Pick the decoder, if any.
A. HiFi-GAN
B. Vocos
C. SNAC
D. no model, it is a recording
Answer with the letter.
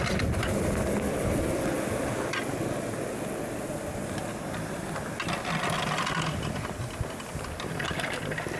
D